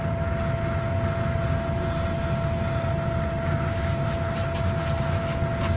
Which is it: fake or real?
real